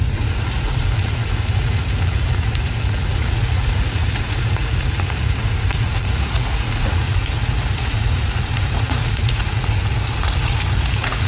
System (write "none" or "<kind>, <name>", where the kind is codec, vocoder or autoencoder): vocoder, Vocos